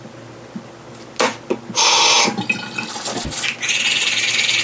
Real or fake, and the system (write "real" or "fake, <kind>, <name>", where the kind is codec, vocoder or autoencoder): real